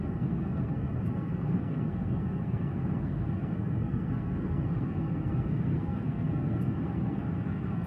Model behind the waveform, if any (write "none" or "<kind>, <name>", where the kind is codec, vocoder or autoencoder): codec, SNAC